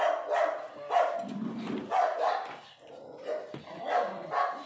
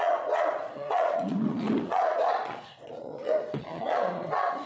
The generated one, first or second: second